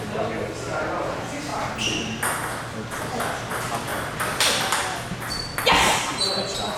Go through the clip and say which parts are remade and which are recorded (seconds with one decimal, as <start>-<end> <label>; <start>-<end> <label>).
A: 0.0-6.8 recorded

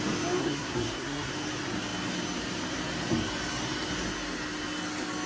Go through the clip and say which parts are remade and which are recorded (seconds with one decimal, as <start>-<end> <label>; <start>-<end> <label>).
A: 0.0-0.4 recorded; 0.4-1.3 remade; 1.3-5.3 recorded

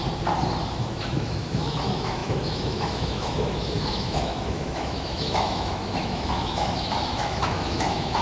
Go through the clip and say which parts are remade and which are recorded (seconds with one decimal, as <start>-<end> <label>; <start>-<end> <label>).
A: 0.0-0.7 recorded; 0.7-8.2 remade

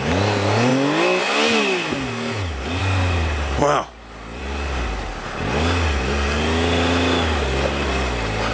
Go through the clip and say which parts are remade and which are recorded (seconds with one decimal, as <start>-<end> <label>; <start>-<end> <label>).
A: 0.0-8.5 recorded

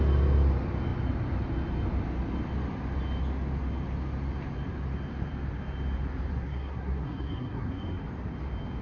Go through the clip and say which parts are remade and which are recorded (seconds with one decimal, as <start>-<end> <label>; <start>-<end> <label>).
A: 0.0-6.3 recorded; 6.3-8.0 remade; 8.0-8.8 recorded

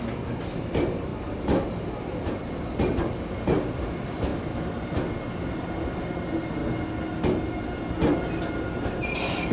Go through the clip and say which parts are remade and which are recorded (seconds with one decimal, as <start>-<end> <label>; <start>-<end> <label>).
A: 0.0-9.5 recorded

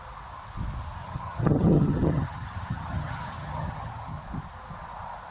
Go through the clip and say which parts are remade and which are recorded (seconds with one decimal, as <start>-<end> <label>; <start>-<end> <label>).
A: 0.0-1.0 recorded; 1.0-4.2 remade; 4.2-5.3 recorded

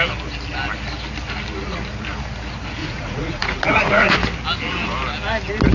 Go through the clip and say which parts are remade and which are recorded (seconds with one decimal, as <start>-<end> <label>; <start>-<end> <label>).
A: 0.0-2.8 recorded; 2.8-4.1 remade; 4.1-5.7 recorded